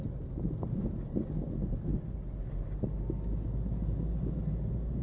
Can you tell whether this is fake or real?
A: real